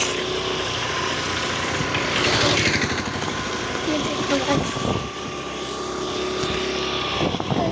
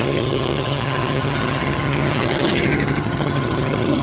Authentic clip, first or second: first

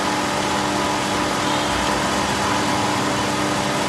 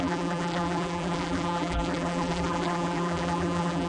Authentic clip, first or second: first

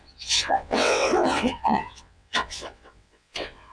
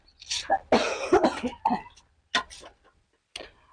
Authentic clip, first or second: second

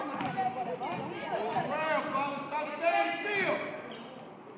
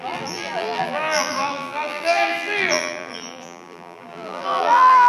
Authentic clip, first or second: first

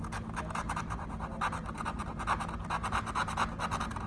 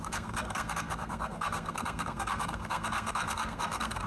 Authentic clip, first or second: first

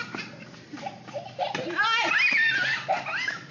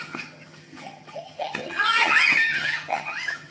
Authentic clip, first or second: first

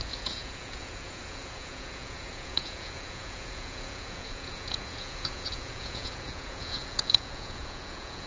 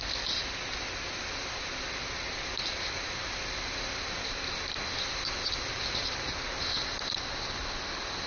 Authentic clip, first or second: second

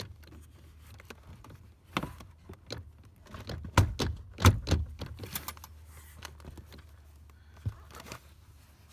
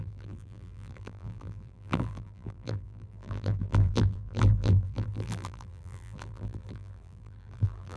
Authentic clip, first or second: first